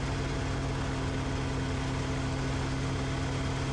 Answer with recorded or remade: recorded